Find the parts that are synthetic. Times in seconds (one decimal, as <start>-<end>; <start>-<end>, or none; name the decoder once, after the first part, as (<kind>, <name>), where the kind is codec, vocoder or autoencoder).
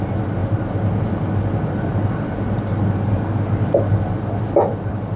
none